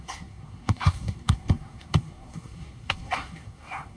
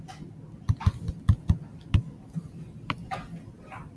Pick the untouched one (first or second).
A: second